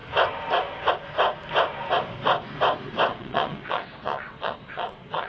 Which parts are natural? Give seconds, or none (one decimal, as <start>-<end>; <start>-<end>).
0.0-3.1